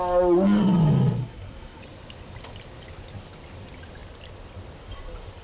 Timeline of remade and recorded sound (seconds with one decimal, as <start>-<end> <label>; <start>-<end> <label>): 0.0-1.2 recorded; 1.2-1.8 remade; 1.8-5.4 recorded